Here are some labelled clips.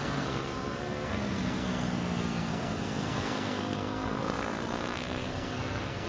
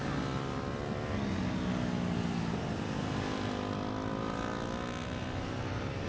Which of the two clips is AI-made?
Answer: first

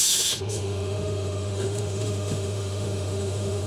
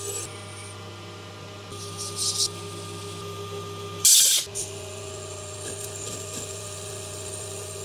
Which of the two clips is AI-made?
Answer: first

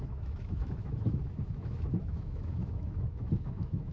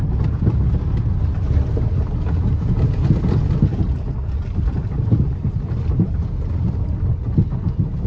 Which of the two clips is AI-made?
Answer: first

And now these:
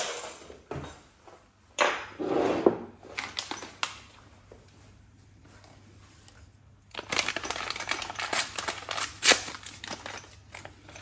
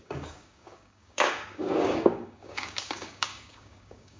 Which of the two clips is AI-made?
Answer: second